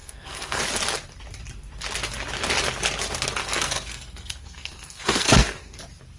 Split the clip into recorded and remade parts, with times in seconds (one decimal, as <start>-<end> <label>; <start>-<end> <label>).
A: 0.0-0.6 remade; 0.6-3.4 recorded; 3.4-5.8 remade; 5.8-6.2 recorded